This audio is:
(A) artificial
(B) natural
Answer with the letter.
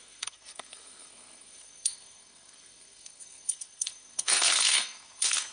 A